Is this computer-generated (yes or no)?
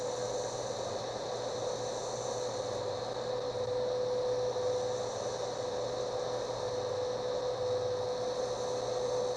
no